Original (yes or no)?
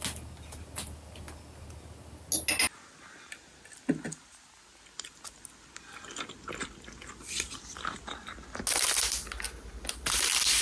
yes